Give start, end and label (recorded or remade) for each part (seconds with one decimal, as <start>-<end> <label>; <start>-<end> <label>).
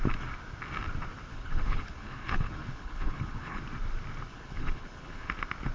0.0-1.3 recorded; 1.3-3.6 remade; 3.6-4.3 recorded; 4.3-5.3 remade; 5.3-5.7 recorded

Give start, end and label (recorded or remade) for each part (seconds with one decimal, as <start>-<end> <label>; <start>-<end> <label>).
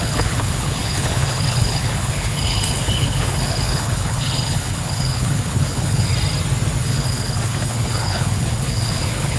0.0-6.1 remade; 6.1-6.8 recorded; 6.8-9.4 remade